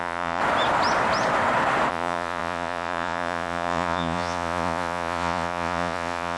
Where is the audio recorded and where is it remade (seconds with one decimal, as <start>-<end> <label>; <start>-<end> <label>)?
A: 0.0-0.4 remade; 0.4-1.9 recorded; 1.9-6.4 remade